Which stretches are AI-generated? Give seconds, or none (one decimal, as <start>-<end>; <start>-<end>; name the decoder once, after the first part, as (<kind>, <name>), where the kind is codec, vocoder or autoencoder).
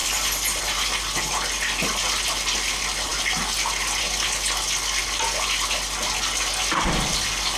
none